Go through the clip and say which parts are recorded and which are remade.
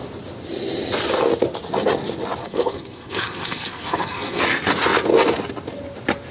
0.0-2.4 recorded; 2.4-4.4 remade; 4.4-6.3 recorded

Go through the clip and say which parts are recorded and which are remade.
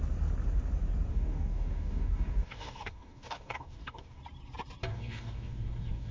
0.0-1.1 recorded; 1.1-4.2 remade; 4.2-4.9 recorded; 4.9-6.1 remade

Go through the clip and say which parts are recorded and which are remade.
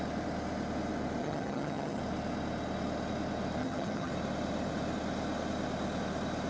0.0-1.2 recorded; 1.2-2.0 remade; 2.0-3.6 recorded; 3.6-4.1 remade; 4.1-6.5 recorded